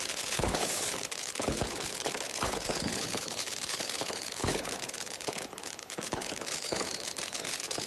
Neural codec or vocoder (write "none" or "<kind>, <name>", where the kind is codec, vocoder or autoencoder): codec, HILCodec